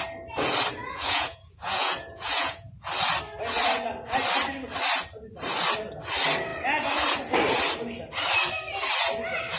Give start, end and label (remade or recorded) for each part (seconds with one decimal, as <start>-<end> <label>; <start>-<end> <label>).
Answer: 0.0-0.8 recorded; 0.8-2.7 remade; 2.7-9.6 recorded